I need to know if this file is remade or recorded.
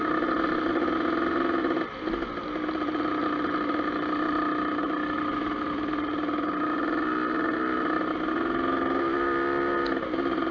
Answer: recorded